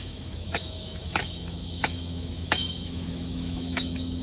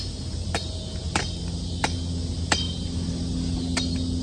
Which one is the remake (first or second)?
first